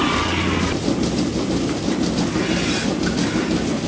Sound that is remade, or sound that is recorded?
recorded